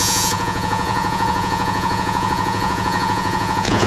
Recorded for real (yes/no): no